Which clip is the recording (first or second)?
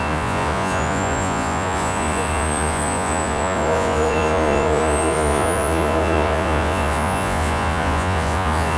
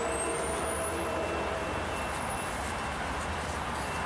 second